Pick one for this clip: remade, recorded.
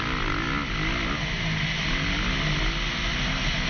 recorded